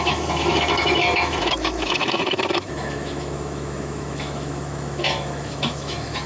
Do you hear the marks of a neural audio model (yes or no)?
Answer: yes